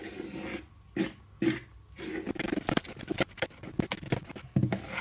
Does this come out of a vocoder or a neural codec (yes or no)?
no